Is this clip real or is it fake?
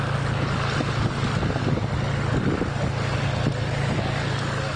real